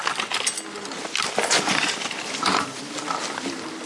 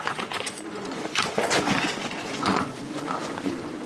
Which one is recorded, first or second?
first